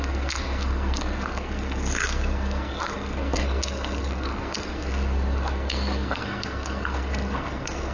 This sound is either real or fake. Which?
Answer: fake